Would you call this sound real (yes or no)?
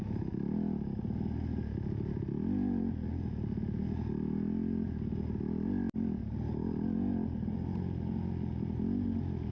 yes